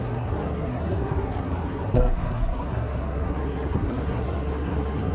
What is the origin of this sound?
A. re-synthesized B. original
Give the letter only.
A